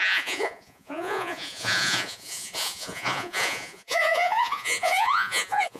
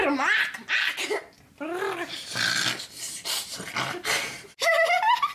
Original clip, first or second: second